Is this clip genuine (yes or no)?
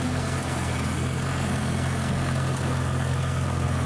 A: no